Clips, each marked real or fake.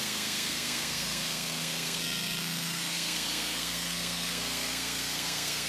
fake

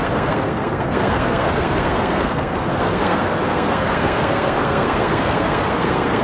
fake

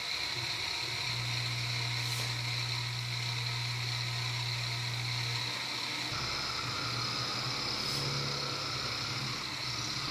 real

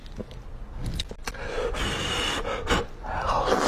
real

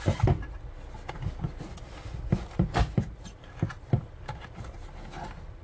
real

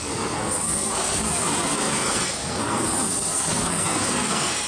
fake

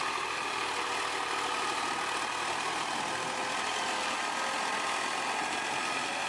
real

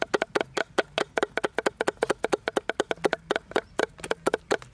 real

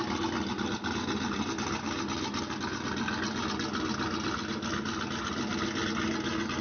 real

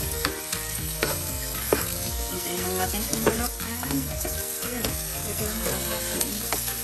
fake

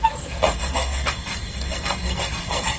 fake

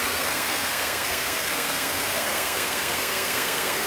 fake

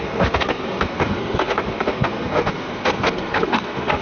fake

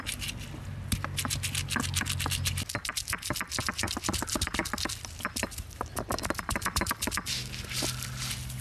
real